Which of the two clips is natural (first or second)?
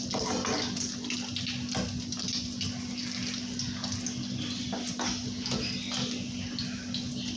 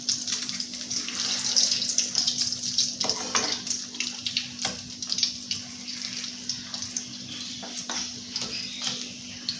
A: first